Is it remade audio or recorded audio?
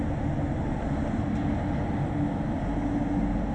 recorded